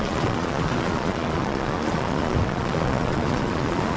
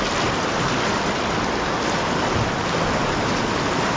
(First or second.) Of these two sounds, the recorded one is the second